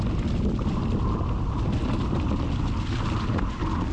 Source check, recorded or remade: recorded